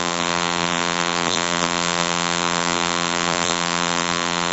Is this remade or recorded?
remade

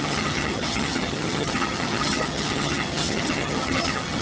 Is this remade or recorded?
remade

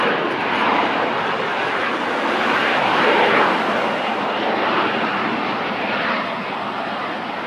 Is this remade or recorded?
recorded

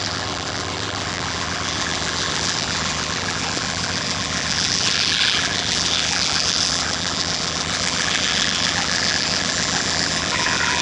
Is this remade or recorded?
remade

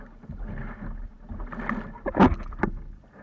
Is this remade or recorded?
recorded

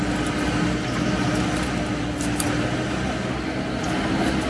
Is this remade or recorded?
recorded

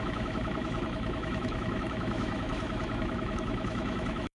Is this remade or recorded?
remade